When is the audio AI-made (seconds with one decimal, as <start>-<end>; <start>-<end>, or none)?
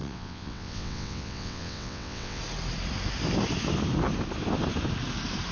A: 0.0-2.4